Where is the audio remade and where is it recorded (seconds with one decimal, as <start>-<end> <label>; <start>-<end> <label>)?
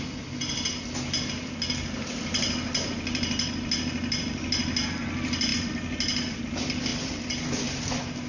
0.0-8.3 recorded